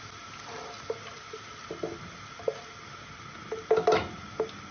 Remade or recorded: recorded